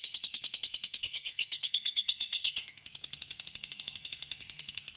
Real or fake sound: fake